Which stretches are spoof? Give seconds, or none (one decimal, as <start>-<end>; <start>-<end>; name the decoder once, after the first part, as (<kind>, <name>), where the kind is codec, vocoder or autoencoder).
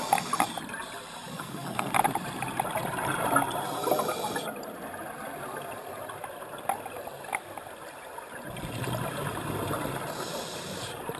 1.3-1.9 (codec, SNAC)